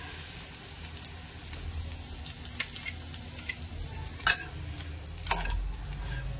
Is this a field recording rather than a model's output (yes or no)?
yes